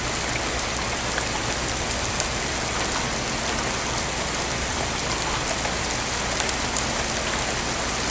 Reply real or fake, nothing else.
real